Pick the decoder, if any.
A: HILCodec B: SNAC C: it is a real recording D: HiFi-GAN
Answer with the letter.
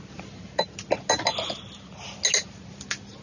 C